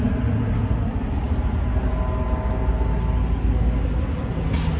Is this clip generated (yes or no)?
no